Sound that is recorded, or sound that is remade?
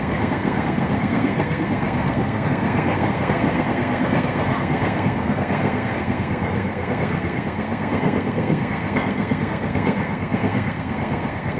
remade